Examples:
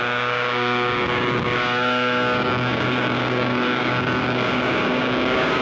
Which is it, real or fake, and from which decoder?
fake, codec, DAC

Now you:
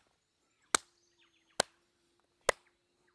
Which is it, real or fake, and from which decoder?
real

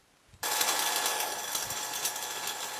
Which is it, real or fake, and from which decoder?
real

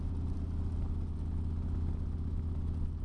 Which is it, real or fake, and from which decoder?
real